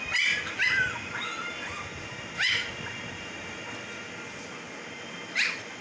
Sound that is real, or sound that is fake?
real